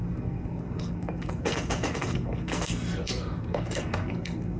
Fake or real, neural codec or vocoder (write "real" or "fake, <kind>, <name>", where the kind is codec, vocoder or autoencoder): fake, codec, SNAC